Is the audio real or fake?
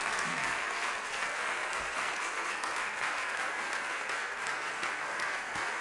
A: fake